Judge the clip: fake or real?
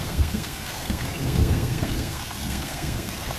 fake